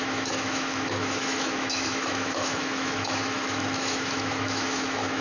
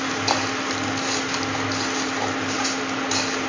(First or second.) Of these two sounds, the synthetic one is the first